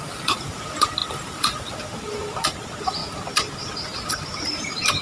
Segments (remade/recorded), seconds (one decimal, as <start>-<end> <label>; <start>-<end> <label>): 0.0-5.0 remade